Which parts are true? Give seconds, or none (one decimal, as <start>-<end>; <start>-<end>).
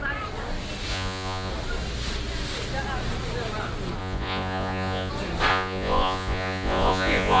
0.0-0.9; 1.5-4.0; 5.1-5.5